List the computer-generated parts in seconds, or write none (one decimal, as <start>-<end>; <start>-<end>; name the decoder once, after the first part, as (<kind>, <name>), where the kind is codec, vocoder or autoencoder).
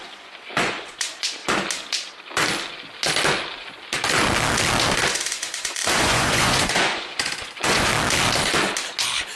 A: 0.0-1.4 (vocoder, Vocos); 5.1-7.9